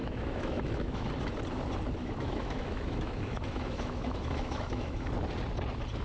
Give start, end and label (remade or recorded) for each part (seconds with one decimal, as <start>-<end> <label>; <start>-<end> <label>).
0.0-1.1 remade; 1.1-2.0 recorded; 2.0-5.1 remade; 5.1-6.0 recorded